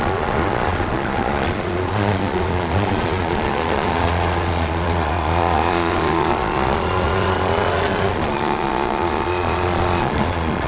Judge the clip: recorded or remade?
remade